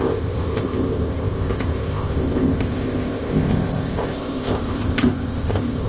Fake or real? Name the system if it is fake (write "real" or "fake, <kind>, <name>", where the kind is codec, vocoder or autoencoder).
fake, codec, ZipCodec